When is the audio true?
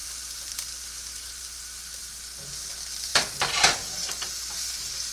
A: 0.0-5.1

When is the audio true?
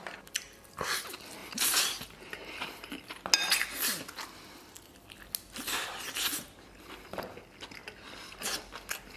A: 0.0-1.4; 2.9-9.2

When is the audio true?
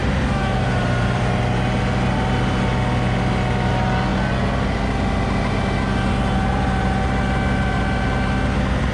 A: 1.4-8.9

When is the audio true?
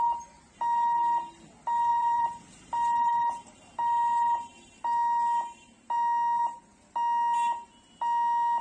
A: 0.0-1.9; 2.4-8.6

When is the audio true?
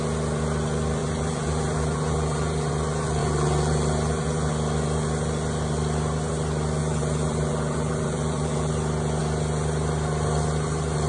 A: 0.0-1.0; 2.7-3.2; 4.5-6.8; 8.7-11.1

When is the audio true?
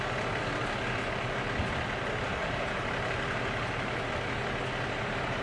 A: 0.0-2.4; 4.1-5.4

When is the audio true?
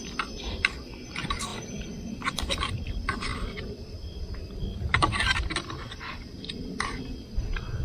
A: 0.0-7.8